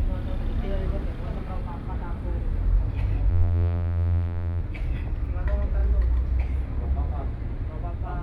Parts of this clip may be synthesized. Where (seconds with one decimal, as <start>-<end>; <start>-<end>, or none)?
3.3-4.6

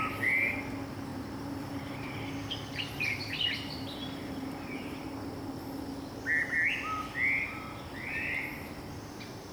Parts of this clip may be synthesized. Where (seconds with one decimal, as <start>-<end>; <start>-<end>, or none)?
1.1-5.4

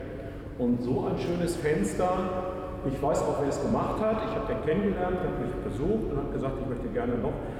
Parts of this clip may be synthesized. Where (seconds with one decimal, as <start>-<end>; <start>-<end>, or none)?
0.0-1.0; 2.6-5.2; 6.7-7.6

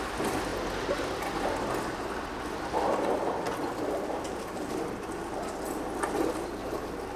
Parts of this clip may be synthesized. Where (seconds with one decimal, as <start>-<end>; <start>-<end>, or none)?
6.6-7.2